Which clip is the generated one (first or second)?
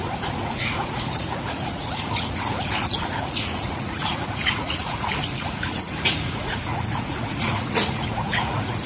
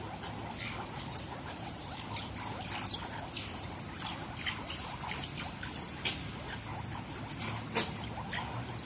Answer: first